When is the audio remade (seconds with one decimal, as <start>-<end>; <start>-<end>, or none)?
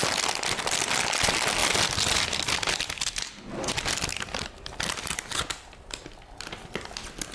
none